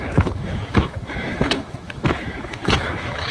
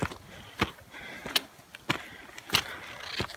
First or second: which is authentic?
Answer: second